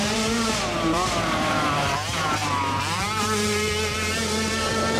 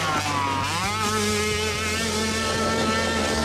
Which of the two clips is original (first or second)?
second